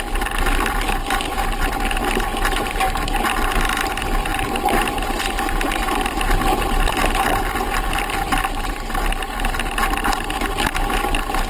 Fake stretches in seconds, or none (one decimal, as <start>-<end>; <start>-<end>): 4.3-6.9